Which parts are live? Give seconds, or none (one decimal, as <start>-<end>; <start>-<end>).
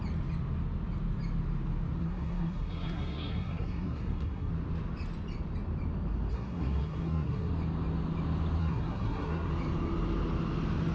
0.0-2.0; 4.5-6.3; 7.5-8.6; 9.5-10.9